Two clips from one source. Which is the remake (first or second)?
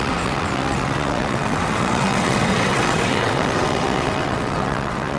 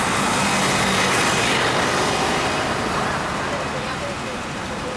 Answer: first